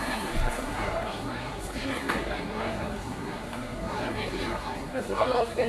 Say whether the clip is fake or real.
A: fake